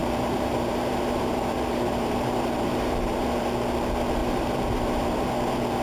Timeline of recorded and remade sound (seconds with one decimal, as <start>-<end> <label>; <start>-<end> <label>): 0.0-3.4 remade; 3.4-4.2 recorded; 4.2-5.3 remade; 5.3-5.8 recorded